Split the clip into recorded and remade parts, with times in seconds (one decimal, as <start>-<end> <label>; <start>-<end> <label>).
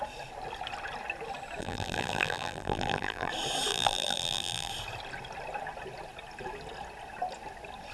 0.0-1.6 recorded; 1.6-3.3 remade; 3.3-3.7 recorded; 3.7-4.7 remade; 4.7-7.9 recorded